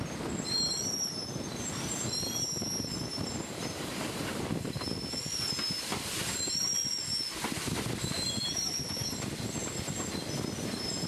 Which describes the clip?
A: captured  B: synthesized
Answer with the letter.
A